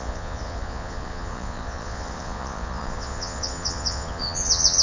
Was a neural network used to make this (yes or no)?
yes